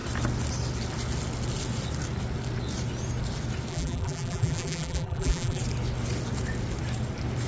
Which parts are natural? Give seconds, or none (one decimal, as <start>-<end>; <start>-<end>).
0.0-3.7; 5.6-7.5

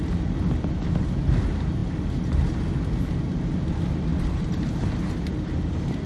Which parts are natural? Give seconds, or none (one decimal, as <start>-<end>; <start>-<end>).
0.0-4.1; 4.9-6.1

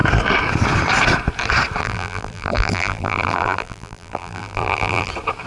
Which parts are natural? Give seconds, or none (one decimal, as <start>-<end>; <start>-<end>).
0.0-1.8; 5.1-5.5

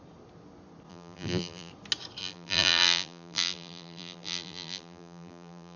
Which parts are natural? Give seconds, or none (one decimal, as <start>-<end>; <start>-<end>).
0.0-0.9; 1.7-2.2

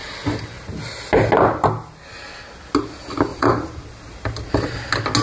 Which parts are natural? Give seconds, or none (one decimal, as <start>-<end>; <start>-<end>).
0.0-3.3; 3.8-5.2